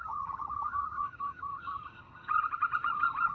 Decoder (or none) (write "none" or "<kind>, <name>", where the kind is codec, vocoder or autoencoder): vocoder, HiFi-GAN